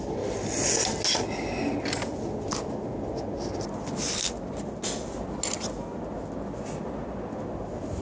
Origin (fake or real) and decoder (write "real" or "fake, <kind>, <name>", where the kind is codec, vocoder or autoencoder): real